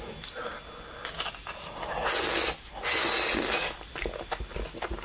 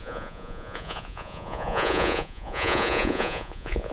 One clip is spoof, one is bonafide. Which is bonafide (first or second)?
first